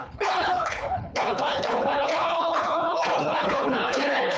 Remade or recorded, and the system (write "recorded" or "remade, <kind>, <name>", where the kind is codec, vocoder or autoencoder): remade, codec, HILCodec